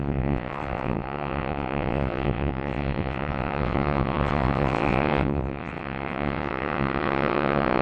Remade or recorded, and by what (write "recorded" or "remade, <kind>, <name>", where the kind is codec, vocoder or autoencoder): remade, vocoder, WaveNeXt